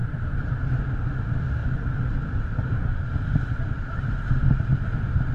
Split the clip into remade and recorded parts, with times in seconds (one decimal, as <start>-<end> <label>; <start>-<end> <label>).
0.0-0.8 remade; 0.8-5.3 recorded